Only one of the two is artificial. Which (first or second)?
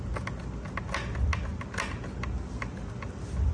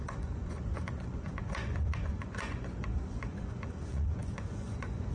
second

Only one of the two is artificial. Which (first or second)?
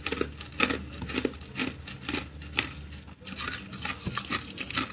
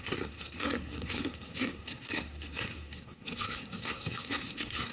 second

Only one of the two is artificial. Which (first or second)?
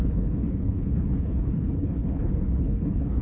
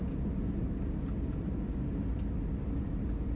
first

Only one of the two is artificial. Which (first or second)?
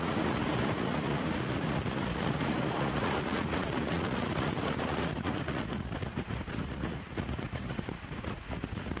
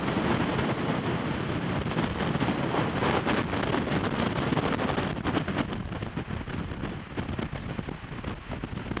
first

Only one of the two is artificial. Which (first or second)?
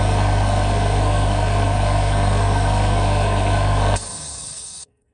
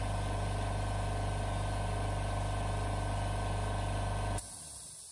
first